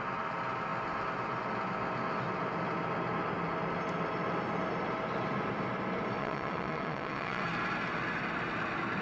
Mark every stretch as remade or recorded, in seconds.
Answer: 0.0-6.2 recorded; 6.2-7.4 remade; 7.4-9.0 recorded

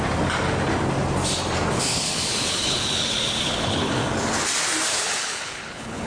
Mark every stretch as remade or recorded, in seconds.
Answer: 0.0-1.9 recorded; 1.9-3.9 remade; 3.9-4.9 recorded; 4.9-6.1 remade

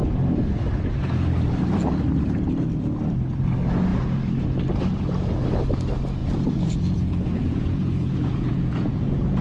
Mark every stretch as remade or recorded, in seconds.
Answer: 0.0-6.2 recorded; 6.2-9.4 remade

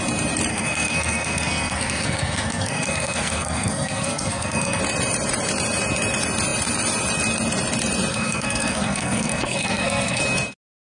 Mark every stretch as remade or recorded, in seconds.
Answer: 0.0-0.5 recorded; 0.5-4.8 remade; 4.8-8.1 recorded; 8.1-10.2 remade; 10.2-11.0 recorded